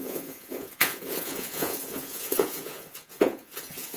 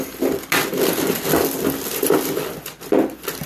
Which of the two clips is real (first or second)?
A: second